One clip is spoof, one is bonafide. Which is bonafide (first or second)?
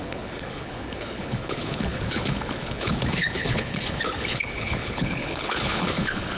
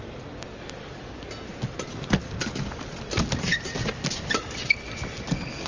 second